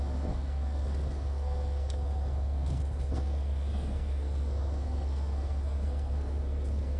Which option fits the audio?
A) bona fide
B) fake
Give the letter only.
B